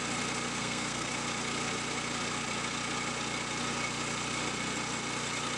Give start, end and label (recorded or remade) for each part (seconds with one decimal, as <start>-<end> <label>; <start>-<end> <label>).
0.0-0.6 recorded; 0.6-1.1 remade; 1.1-5.6 recorded